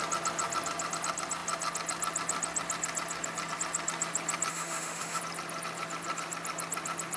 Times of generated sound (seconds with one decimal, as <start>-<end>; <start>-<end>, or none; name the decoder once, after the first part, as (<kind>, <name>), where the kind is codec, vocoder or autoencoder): 4.5-5.2 (autoencoder, DAC-VAE)